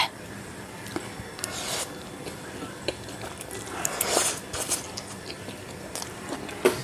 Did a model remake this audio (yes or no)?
no